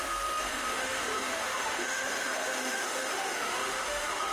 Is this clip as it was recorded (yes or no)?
no